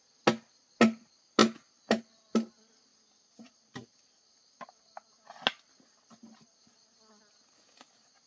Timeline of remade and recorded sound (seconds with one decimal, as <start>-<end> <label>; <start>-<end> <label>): 0.0-8.3 recorded